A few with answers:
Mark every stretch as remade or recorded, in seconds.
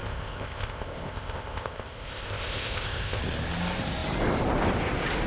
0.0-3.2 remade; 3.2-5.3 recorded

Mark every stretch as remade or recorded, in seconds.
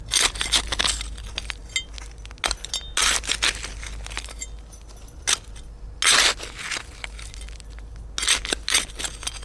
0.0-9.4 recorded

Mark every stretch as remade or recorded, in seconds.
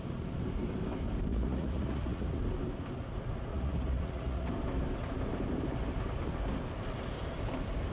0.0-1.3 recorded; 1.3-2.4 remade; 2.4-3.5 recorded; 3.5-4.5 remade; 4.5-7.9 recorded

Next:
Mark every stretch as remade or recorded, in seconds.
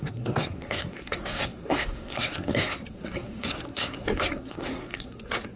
0.0-5.6 remade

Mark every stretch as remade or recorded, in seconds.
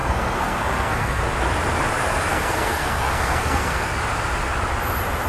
0.0-1.2 remade; 1.2-2.3 recorded; 2.3-3.9 remade; 3.9-5.3 recorded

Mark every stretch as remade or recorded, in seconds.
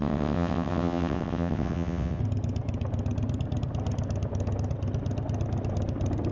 0.0-2.2 remade; 2.2-6.3 recorded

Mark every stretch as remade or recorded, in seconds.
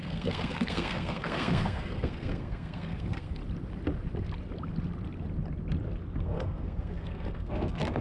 0.0-3.4 remade; 3.4-6.2 recorded; 6.2-8.0 remade